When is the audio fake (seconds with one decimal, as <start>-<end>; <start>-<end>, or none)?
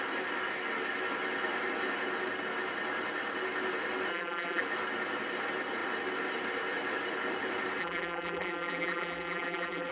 4.1-4.6; 7.8-9.9